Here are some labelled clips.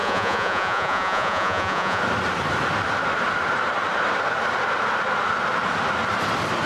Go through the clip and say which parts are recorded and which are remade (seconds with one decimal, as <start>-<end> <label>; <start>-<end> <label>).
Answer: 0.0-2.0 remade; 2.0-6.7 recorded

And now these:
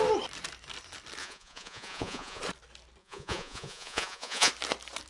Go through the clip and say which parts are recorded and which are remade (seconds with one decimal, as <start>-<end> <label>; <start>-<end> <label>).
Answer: 0.0-1.2 recorded; 1.2-2.4 remade; 2.4-3.0 recorded; 3.0-4.5 remade; 4.5-5.1 recorded

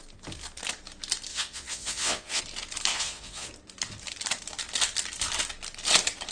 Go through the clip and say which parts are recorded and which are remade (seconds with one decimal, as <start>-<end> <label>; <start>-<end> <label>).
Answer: 0.0-1.3 recorded; 1.3-2.4 remade; 2.4-2.9 recorded; 2.9-3.5 remade; 3.5-6.3 recorded

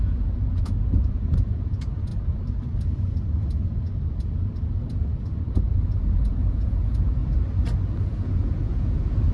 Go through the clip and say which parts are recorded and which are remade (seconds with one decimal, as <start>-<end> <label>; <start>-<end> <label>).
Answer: 0.0-2.1 remade; 2.1-5.4 recorded; 5.4-7.2 remade; 7.2-8.0 recorded; 8.0-9.3 remade

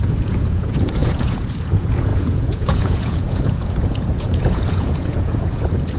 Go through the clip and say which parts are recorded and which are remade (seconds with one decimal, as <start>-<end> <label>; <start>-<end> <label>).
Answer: 0.0-6.0 remade